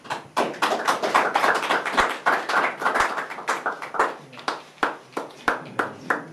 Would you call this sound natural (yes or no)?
yes